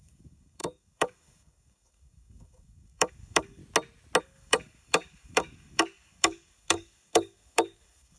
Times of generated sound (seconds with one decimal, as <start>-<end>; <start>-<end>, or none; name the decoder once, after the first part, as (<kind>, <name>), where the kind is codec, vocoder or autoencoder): 0.0-3.6 (codec, DAC); 4.2-8.2